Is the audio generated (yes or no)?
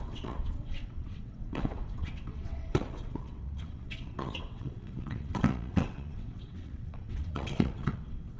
yes